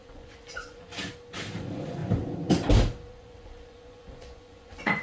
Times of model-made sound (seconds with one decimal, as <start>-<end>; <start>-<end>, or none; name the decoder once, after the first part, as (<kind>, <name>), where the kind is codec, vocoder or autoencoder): 0.0-1.0 (vocoder, Vocos); 1.6-2.0; 3.1-5.0